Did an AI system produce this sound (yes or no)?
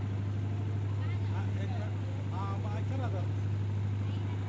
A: no